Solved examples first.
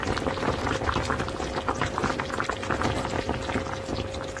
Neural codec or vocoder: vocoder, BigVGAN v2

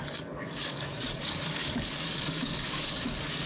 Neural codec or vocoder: codec, DAC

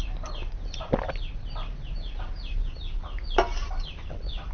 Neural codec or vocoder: none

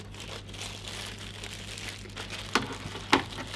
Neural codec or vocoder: none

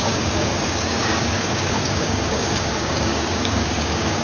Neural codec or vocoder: codec, DAC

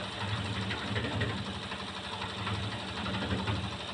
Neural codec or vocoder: none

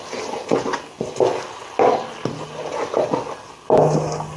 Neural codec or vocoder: none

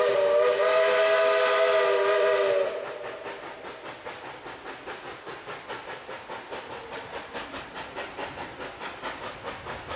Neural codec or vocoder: none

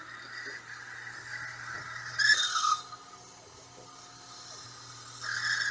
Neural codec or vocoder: none